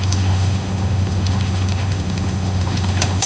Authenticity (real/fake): fake